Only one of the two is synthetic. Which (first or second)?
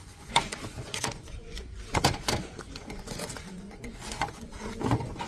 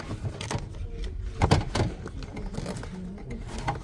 first